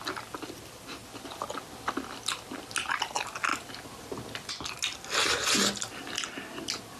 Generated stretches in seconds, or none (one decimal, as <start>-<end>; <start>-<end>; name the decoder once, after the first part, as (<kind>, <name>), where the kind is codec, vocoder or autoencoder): none